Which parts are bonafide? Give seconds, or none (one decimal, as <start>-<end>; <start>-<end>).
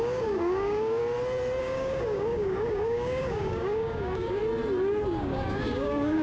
1.0-1.6; 4.4-5.1